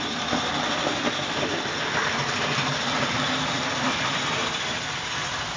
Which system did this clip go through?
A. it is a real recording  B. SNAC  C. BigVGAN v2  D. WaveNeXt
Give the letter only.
C